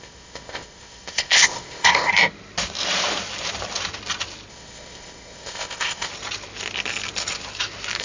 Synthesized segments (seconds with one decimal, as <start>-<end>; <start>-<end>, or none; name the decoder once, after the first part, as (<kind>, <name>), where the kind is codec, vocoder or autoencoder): 0.0-2.1 (codec, ZipCodec); 4.5-6.1